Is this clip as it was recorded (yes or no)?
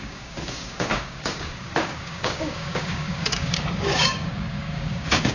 no